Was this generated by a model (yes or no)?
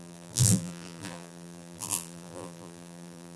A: yes